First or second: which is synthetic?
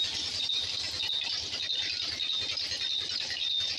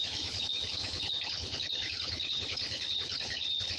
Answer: second